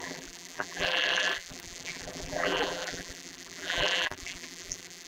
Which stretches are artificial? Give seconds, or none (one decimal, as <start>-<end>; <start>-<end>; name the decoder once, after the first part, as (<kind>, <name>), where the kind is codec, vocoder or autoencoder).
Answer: 0.0-5.1 (vocoder, BigVGAN v2)